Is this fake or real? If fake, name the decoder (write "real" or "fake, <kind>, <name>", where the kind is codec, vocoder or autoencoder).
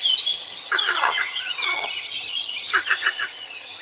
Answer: fake, vocoder, HiFi-GAN